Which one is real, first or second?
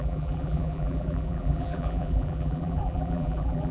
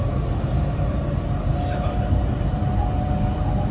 second